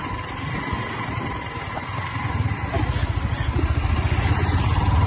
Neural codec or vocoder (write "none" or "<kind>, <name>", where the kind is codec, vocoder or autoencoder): none